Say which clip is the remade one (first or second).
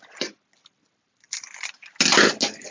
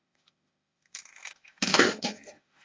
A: second